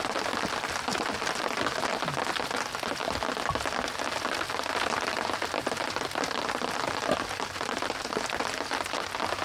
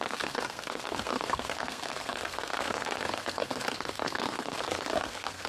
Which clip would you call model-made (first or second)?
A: second